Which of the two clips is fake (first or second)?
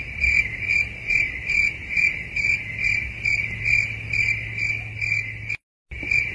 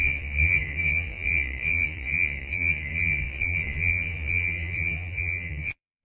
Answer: second